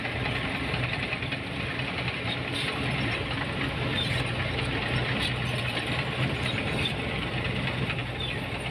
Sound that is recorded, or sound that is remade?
remade